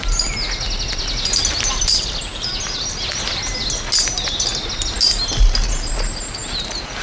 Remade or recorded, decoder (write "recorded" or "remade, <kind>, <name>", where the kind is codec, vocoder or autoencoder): recorded